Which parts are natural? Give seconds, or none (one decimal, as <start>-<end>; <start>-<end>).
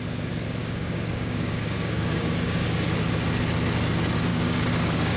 0.0-0.6; 3.1-4.3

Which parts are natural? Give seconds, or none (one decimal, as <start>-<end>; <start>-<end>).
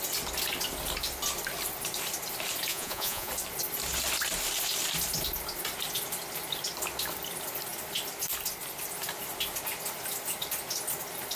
0.0-2.7; 3.3-11.4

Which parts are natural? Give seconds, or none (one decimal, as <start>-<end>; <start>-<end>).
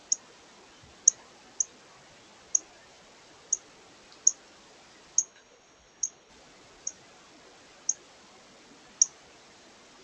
0.0-5.2; 6.3-10.0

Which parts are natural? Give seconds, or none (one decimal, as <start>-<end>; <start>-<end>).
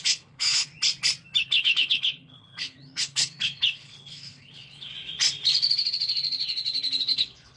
0.7-1.4; 4.9-7.0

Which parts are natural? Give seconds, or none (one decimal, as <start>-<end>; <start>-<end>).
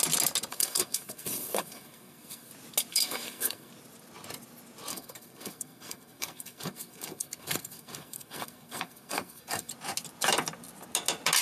0.0-0.5; 2.5-2.9; 3.7-4.9; 9.7-11.4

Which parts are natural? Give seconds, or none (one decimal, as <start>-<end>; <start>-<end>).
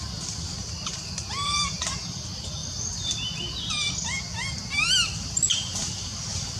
0.0-6.6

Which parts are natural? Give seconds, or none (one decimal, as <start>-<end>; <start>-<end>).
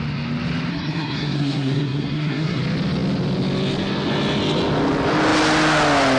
0.0-0.7; 2.6-6.2